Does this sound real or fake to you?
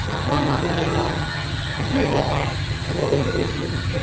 fake